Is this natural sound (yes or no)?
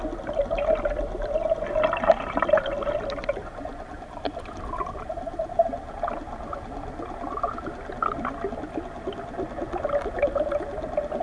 yes